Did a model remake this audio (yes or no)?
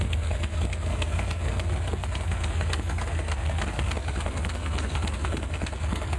yes